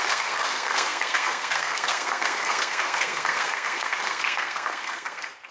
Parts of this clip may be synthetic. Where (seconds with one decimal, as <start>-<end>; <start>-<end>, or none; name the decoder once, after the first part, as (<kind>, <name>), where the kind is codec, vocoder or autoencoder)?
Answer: 0.0-5.5 (codec, SNAC)